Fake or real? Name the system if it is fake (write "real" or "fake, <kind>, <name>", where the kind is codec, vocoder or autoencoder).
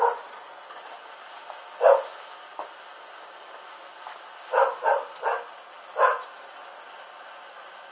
real